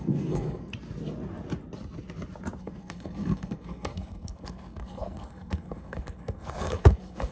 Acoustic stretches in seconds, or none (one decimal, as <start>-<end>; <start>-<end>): 0.7-2.6